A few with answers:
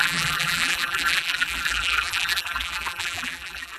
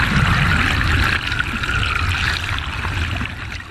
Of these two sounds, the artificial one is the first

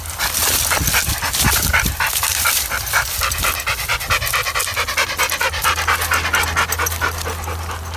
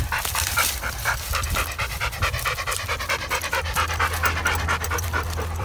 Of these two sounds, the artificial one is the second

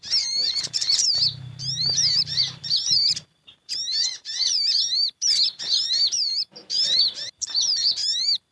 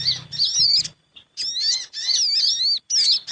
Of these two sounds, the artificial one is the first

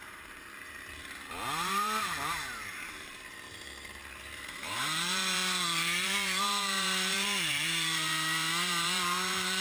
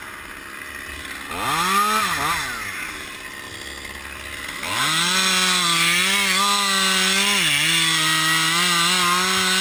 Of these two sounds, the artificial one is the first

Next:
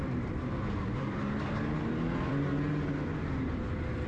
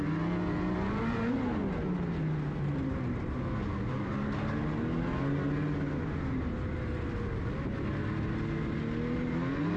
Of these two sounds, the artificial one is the first